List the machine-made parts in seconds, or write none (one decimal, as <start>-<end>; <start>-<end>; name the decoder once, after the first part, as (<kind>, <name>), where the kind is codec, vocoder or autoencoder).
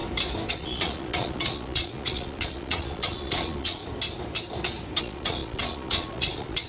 0.5-3.8 (vocoder, Vocos); 5.0-6.7